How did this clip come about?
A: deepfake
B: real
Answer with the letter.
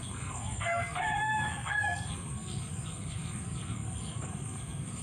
A